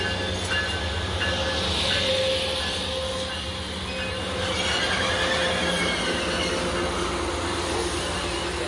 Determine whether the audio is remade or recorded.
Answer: recorded